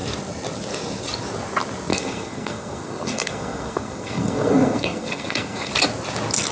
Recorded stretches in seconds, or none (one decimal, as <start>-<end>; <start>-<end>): 0.0-1.9; 5.7-6.5